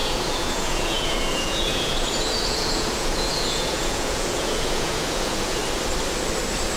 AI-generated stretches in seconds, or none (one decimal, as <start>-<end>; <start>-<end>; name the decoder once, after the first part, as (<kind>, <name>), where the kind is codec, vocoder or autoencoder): 0.0-5.6 (vocoder, Vocos)